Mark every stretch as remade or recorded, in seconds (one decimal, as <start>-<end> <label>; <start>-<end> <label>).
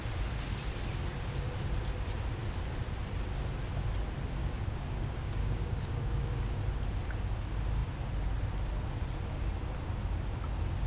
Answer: 0.0-4.4 recorded; 4.4-6.6 remade; 6.6-10.9 recorded